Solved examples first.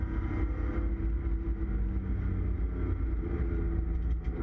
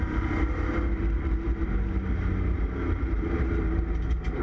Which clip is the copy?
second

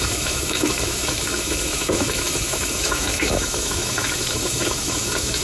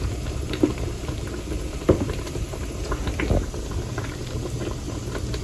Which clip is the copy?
first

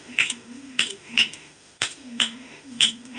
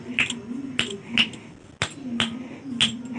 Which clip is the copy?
first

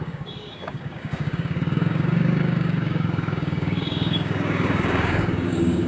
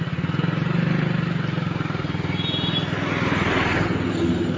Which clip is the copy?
first